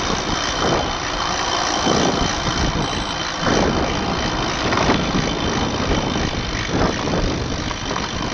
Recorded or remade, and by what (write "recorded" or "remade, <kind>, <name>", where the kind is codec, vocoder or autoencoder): remade, vocoder, BigVGAN v2